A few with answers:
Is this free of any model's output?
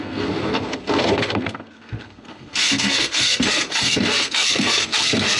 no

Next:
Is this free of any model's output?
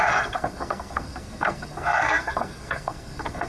no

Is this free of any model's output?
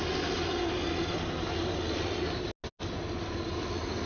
yes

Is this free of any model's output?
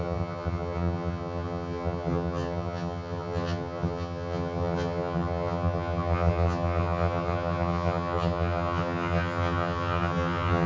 no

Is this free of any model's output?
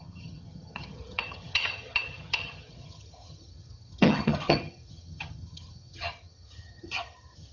no